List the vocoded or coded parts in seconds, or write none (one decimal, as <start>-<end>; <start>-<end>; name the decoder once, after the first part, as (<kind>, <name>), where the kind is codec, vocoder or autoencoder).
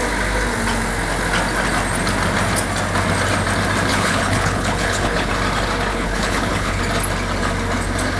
3.9-5.3 (codec, HILCodec); 5.9-6.8